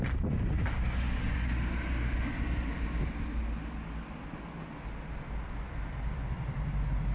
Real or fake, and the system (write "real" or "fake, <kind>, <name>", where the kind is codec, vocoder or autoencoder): real